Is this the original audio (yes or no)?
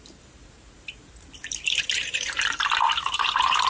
no